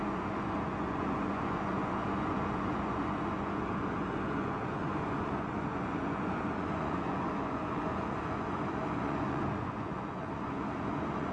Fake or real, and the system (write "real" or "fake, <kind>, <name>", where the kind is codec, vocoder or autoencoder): fake, vocoder, Vocos